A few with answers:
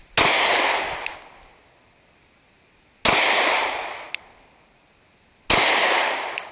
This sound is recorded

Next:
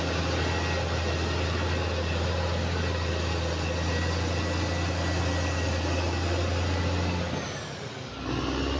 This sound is recorded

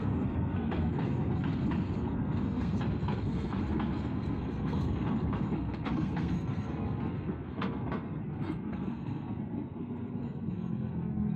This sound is remade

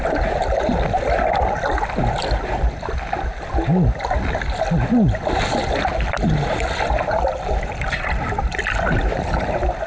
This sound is recorded